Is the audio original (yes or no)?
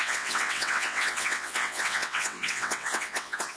no